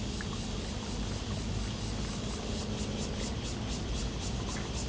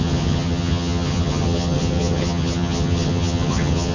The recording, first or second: first